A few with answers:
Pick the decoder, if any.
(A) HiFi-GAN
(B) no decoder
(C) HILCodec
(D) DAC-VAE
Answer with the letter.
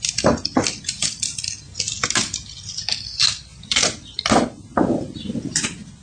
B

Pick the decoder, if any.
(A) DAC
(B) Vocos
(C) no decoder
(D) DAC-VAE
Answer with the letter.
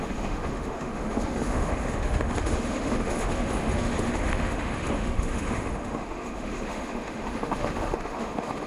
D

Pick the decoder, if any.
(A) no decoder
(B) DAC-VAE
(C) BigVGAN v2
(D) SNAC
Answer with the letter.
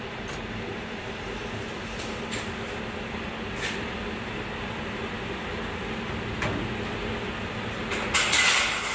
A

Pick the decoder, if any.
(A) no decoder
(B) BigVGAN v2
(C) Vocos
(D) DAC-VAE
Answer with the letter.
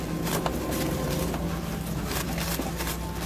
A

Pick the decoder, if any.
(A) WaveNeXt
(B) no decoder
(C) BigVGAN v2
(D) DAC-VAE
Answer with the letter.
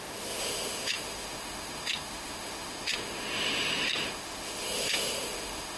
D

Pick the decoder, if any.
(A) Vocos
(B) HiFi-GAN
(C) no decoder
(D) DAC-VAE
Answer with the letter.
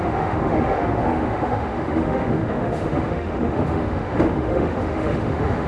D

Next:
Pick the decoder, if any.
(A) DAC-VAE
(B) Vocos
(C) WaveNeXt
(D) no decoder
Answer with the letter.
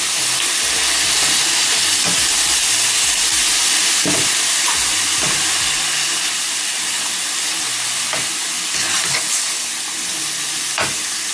D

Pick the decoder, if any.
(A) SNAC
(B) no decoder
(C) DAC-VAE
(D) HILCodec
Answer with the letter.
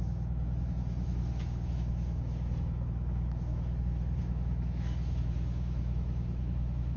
C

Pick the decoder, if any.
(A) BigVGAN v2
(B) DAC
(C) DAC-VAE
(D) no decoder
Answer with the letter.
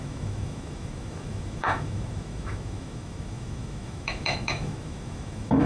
C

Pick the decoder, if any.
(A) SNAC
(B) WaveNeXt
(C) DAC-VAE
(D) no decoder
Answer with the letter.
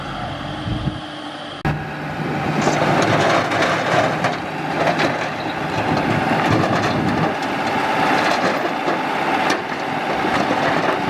D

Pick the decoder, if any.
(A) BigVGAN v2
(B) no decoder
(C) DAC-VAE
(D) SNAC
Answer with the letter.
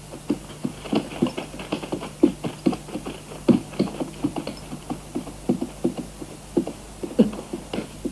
B